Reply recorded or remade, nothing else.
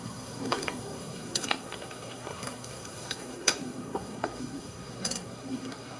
remade